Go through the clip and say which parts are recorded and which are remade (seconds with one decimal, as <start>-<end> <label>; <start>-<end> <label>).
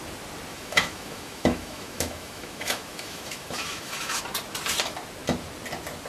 0.0-0.5 recorded; 0.5-4.2 remade; 4.2-6.1 recorded